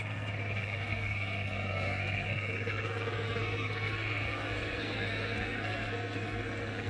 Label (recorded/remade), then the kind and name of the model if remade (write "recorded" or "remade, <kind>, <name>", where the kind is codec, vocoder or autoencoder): remade, codec, SNAC